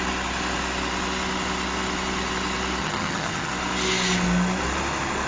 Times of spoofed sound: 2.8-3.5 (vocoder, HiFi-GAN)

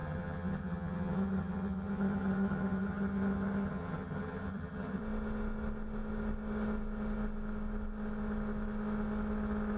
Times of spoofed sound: 0.0-5.0 (vocoder, HiFi-GAN)

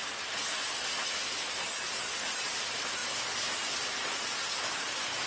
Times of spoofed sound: none

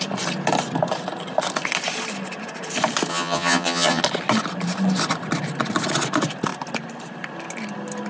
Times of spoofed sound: 3.1-4.0 (vocoder, HiFi-GAN)

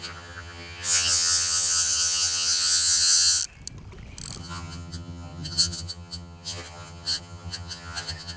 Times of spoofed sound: 0.0-3.4 (vocoder, HiFi-GAN); 4.4-8.4

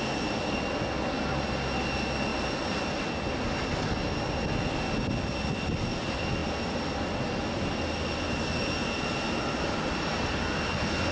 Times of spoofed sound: none